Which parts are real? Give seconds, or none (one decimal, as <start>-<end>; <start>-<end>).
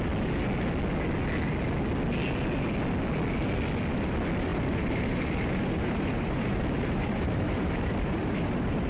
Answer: 0.0-4.5